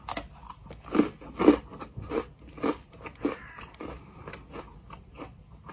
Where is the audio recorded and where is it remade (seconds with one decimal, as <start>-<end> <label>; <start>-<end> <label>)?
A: 0.0-5.7 recorded

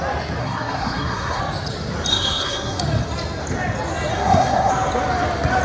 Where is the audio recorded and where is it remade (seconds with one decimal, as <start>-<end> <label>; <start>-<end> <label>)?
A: 0.0-0.4 recorded; 0.4-1.4 remade; 1.4-2.1 recorded; 2.1-2.8 remade; 2.8-4.1 recorded; 4.1-4.7 remade; 4.7-5.6 recorded

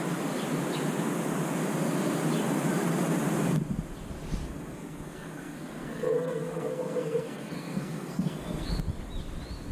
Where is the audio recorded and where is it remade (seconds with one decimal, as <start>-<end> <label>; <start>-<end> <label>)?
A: 0.0-4.4 recorded; 4.4-8.7 remade; 8.7-9.7 recorded